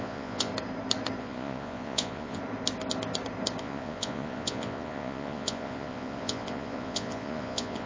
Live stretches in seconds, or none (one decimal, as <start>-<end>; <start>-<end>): 0.5-1.2; 2.4-3.6